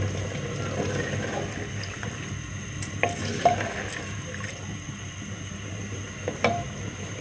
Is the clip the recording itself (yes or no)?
yes